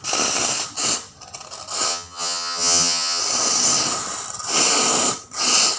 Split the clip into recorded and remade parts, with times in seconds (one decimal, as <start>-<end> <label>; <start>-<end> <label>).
0.0-1.9 recorded; 1.9-3.2 remade; 3.2-5.8 recorded